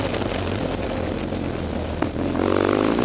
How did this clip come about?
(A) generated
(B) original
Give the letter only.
B